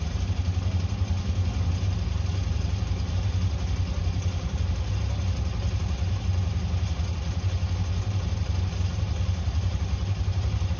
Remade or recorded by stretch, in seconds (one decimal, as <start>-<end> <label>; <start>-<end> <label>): 0.0-10.8 recorded